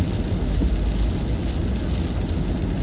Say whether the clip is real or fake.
real